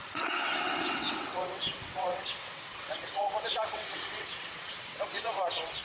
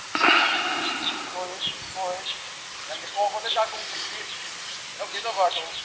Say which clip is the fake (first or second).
first